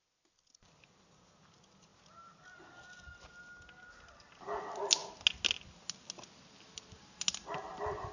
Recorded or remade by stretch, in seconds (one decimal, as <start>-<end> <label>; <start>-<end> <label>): 0.0-8.1 recorded